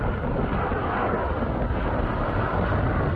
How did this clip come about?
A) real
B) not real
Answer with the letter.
A